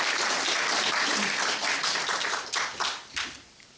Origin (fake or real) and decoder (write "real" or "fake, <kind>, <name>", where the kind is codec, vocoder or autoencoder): real